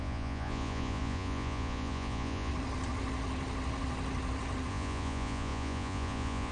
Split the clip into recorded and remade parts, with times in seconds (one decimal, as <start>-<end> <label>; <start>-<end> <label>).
0.0-2.5 remade; 2.5-4.7 recorded; 4.7-6.5 remade